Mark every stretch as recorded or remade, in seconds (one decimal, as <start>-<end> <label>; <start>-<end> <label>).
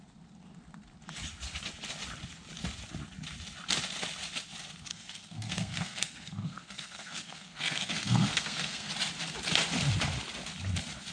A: 0.0-4.9 recorded; 4.9-8.9 remade; 8.9-11.1 recorded